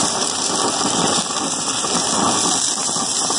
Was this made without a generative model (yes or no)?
yes